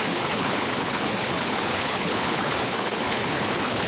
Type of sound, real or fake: fake